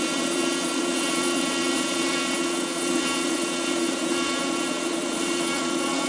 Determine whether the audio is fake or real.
fake